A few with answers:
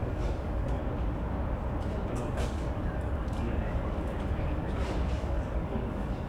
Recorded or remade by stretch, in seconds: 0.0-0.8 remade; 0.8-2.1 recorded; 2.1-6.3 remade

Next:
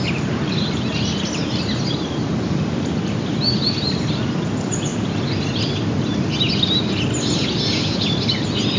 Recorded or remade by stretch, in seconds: 0.0-8.8 recorded

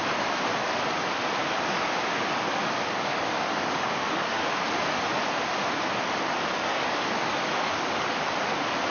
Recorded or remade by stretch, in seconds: 0.0-1.4 recorded; 1.4-4.5 remade; 4.5-6.7 recorded; 6.7-8.2 remade; 8.2-8.9 recorded

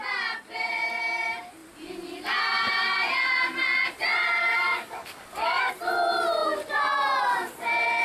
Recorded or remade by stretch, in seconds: 0.0-4.4 recorded; 4.4-5.7 remade; 5.7-8.0 recorded

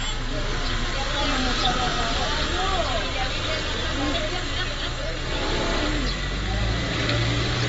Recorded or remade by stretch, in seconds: 0.0-7.7 recorded